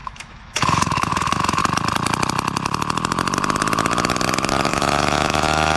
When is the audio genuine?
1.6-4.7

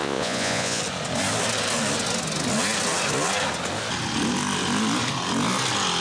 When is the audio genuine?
0.8-6.0